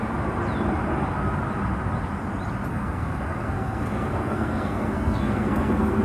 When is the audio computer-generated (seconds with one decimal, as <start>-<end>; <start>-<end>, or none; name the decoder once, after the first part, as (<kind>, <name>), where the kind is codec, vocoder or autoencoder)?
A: 2.7-6.0 (codec, SNAC)